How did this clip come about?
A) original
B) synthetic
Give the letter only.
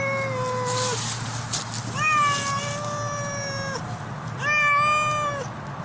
A